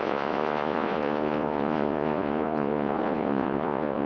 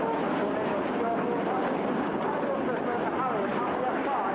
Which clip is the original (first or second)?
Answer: second